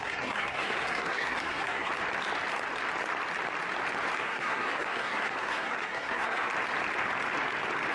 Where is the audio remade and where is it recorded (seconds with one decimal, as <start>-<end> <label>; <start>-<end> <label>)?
0.0-1.9 remade; 1.9-4.2 recorded; 4.2-6.5 remade; 6.5-7.9 recorded